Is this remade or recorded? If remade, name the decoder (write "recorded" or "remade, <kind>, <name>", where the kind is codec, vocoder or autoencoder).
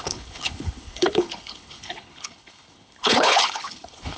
remade, codec, HILCodec